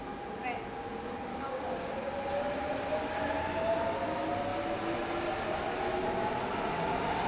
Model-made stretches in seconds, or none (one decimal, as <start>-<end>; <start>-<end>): 1.3-1.9